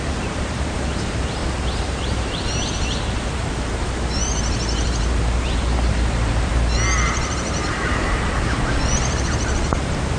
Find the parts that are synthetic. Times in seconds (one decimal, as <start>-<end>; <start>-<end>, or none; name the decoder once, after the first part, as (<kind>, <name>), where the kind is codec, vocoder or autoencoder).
0.0-6.5 (vocoder, BigVGAN v2); 7.0-10.2